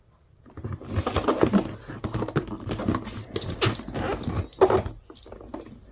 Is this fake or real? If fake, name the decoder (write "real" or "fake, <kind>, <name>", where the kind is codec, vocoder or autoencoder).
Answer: real